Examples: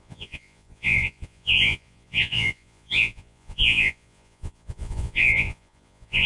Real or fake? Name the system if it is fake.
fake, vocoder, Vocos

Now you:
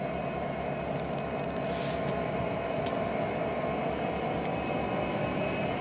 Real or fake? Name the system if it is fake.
real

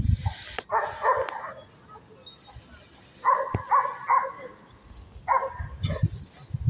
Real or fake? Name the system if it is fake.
real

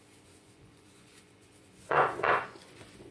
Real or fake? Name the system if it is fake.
fake, vocoder, Vocos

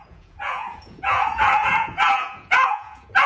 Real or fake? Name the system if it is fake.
fake, vocoder, Vocos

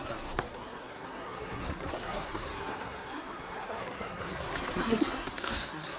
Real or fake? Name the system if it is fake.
fake, codec, SNAC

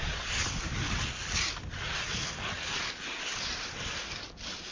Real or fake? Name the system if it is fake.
real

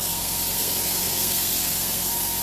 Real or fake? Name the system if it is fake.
fake, codec, SNAC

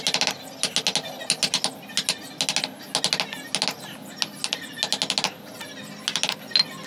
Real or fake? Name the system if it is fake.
real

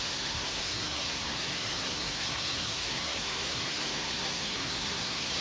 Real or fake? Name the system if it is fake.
fake, codec, SNAC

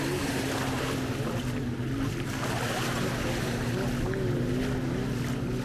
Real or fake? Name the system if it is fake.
real